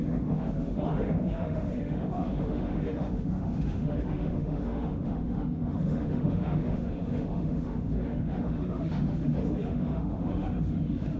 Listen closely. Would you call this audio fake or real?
fake